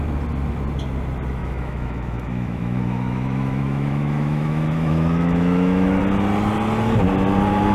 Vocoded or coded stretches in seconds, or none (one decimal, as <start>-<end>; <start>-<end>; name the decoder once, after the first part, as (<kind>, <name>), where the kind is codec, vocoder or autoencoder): 1.4-6.0 (autoencoder, DAC-VAE)